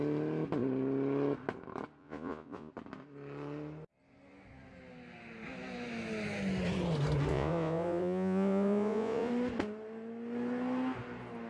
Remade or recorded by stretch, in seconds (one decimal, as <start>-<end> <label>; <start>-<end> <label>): 0.0-2.0 recorded; 2.0-2.7 remade; 2.7-7.3 recorded; 7.3-9.3 remade; 9.3-11.5 recorded